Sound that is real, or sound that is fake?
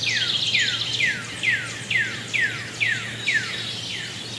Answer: real